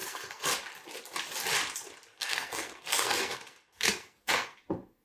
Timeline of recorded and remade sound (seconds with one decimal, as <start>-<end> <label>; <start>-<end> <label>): 0.0-0.5 remade; 0.5-2.1 recorded; 2.1-4.6 remade; 4.6-5.0 recorded